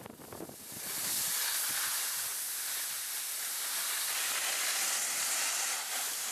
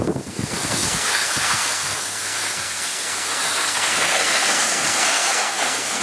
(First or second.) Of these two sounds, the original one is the first